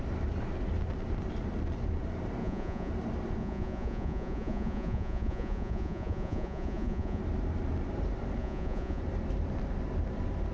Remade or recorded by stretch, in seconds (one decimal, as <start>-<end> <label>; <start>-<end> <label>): 0.0-2.4 recorded; 2.4-2.9 remade; 2.9-3.4 recorded; 3.4-7.2 remade; 7.2-8.4 recorded; 8.4-9.0 remade; 9.0-10.5 recorded